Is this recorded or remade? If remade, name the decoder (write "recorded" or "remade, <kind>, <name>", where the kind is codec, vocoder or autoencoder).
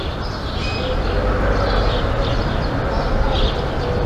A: recorded